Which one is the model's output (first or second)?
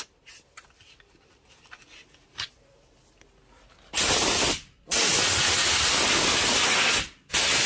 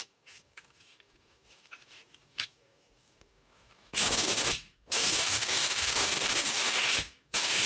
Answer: second